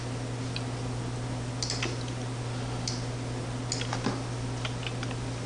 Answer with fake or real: real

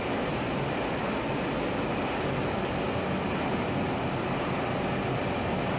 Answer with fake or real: real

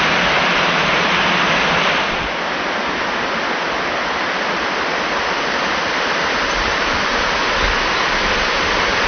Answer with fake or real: real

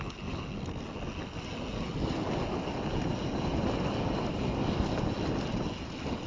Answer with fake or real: real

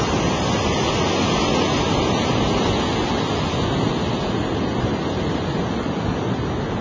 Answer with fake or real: real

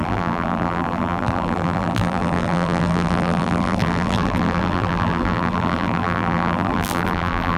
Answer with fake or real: fake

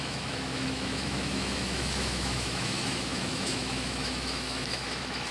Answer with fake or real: fake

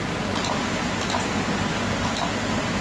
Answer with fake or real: real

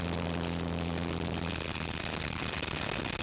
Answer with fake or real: real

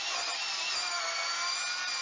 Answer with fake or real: real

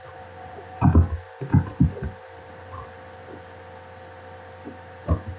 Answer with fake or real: real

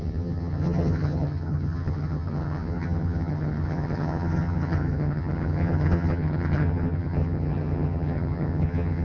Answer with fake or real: fake